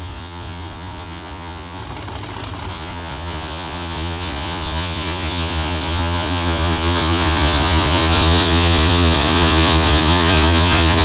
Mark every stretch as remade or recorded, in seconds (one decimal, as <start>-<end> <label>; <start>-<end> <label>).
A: 0.0-1.8 remade; 1.8-2.7 recorded; 2.7-11.0 remade